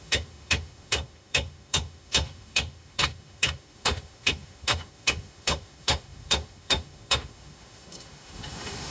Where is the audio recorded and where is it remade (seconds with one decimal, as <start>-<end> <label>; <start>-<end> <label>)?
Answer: 0.0-8.9 remade